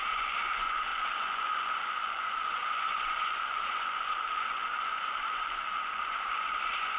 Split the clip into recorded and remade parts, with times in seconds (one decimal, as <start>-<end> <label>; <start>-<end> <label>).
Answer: 0.0-7.0 remade